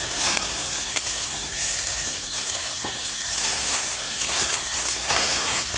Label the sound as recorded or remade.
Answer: remade